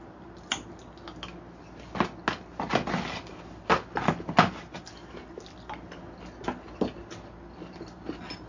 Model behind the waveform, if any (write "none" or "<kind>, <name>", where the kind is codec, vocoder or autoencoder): none